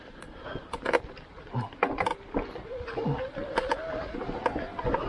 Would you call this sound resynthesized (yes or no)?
no